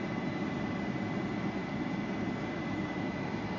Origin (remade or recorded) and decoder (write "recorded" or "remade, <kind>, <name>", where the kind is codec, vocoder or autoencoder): recorded